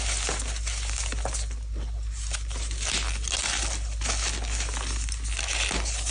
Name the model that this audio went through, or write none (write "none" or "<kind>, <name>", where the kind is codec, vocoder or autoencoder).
none